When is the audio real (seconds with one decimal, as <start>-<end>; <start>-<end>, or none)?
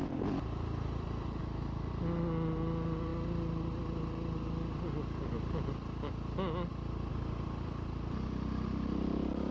0.0-1.4; 1.9-9.5